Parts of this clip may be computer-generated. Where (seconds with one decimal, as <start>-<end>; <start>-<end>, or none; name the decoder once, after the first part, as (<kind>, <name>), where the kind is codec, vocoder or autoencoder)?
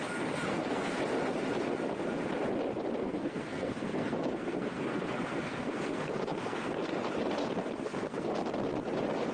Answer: 0.5-1.0 (codec, SNAC); 3.0-7.0; 7.6-8.3